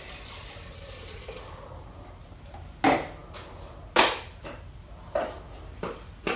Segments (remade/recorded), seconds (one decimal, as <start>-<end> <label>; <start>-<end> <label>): 0.0-6.4 recorded